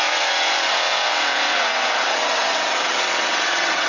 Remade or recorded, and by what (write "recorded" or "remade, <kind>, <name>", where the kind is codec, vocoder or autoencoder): remade, vocoder, WaveNeXt